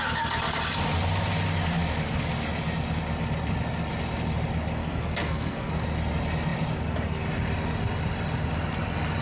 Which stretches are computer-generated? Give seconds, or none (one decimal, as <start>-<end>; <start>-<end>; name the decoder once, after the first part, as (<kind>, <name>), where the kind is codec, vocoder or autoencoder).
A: 4.8-5.7 (codec, SNAC)